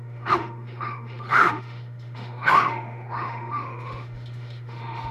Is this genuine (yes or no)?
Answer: no